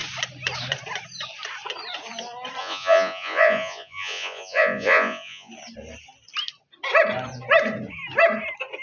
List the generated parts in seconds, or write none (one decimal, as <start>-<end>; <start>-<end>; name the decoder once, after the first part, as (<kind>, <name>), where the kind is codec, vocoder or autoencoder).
2.6-5.5 (vocoder, Vocos)